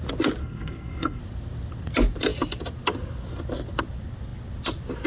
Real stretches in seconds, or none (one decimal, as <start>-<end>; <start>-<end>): 0.0-0.4; 1.2-5.1